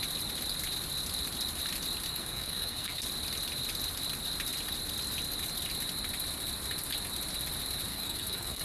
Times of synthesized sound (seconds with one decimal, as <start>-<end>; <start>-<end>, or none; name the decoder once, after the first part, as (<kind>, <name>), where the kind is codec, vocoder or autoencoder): 2.1-3.0 (codec, SNAC); 7.9-8.6